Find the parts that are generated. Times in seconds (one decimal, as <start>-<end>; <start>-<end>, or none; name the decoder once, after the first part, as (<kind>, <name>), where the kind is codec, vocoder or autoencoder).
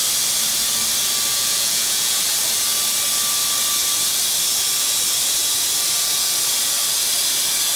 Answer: 1.3-2.2 (vocoder, Vocos)